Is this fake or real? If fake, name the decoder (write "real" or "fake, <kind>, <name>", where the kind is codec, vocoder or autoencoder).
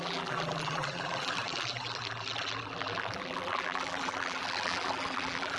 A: fake, vocoder, BigVGAN v2